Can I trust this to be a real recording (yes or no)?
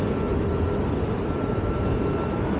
yes